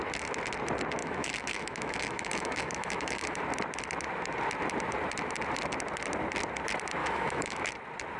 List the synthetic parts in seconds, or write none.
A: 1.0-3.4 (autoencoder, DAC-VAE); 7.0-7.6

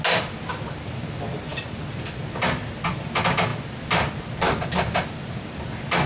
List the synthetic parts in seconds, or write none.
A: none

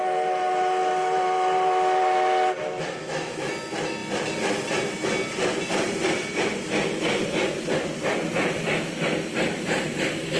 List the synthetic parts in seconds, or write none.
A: 2.6-3.5 (autoencoder, DAC-VAE)

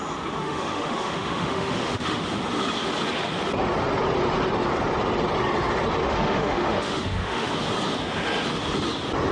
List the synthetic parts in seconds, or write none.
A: 0.4-2.2 (autoencoder, DAC-VAE); 6.0-7.5

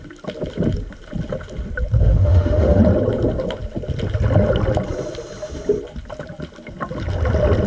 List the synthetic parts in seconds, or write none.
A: 2.0-2.8 (autoencoder, DAC-VAE)

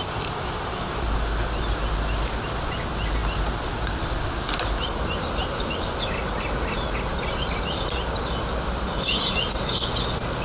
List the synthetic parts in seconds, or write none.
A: none

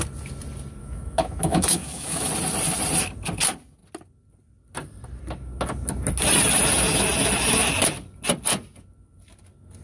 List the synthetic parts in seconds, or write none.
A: 0.8-2.3 (autoencoder, DAC-VAE)